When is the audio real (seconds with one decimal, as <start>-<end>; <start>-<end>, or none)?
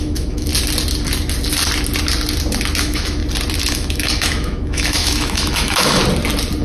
0.5-2.8; 3.2-3.7; 6.0-6.6